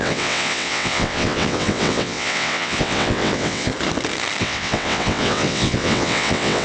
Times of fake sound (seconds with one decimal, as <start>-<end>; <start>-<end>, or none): 0.0-3.7; 4.4-6.6